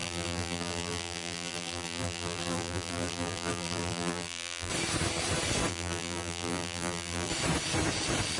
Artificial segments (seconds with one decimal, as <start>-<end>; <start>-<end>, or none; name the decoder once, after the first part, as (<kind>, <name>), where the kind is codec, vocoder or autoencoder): 0.0-4.7 (vocoder, BigVGAN v2); 5.7-7.3